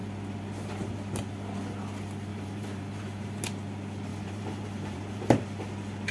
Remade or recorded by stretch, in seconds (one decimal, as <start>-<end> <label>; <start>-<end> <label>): 0.0-2.3 recorded; 2.3-3.4 remade; 3.4-4.1 recorded; 4.1-5.2 remade; 5.2-6.1 recorded